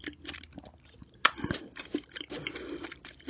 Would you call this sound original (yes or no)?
yes